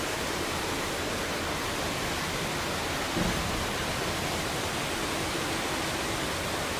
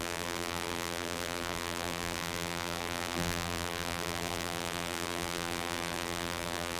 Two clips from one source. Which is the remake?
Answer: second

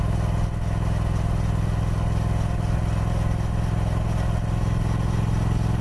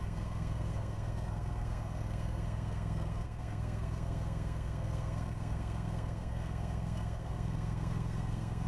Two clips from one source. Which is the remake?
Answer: second